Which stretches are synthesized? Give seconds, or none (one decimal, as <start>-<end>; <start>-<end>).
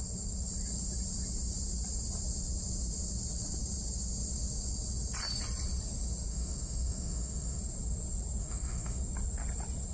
6.3-7.6; 8.4-9.0